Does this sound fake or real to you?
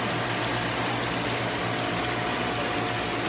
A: real